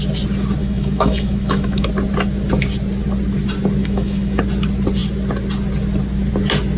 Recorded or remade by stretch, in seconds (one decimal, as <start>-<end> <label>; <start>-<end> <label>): 0.0-0.6 recorded; 0.6-1.9 remade; 1.9-3.8 recorded; 3.8-4.4 remade; 4.4-6.8 recorded